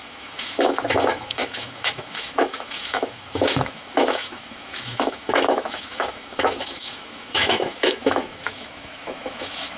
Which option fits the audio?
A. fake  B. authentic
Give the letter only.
A